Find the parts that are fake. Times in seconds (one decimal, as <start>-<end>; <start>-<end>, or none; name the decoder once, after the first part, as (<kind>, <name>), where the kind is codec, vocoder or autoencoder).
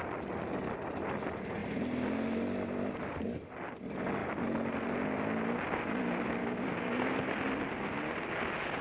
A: 6.4-7.1 (codec, DAC)